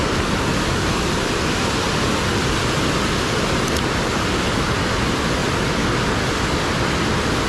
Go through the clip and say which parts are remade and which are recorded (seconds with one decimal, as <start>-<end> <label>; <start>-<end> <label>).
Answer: 0.0-7.5 recorded